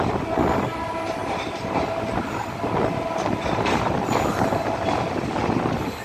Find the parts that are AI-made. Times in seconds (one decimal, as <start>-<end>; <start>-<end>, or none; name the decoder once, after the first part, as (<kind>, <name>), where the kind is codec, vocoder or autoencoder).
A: none